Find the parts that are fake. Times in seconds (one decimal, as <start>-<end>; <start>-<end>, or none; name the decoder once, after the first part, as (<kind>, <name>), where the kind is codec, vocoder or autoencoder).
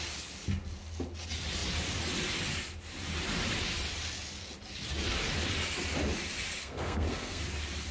6.6-7.4 (codec, SNAC)